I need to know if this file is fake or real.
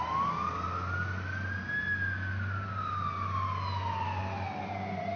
real